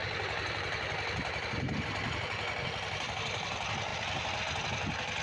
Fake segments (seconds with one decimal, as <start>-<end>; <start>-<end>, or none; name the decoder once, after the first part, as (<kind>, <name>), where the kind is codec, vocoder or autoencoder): 0.0-3.1 (vocoder, BigVGAN v2)